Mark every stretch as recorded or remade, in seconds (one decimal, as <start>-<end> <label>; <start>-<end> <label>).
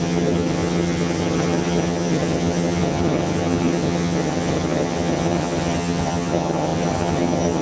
0.0-7.6 remade